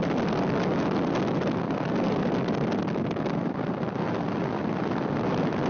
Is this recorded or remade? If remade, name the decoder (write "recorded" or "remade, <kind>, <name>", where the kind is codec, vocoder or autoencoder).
recorded